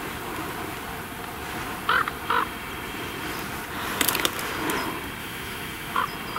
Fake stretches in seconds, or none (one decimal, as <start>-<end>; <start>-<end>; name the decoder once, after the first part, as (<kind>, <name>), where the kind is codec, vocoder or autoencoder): 5.2-6.0 (autoencoder, DAC-VAE)